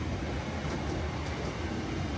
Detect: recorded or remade recorded